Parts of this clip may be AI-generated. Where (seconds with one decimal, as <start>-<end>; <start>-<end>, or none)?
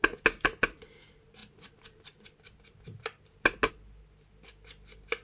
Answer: none